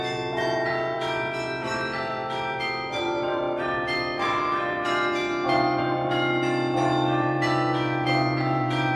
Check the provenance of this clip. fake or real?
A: fake